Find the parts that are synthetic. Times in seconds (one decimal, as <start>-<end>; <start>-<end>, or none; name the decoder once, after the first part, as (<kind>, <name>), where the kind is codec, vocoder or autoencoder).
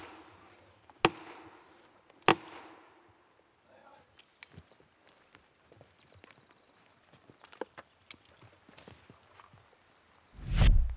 none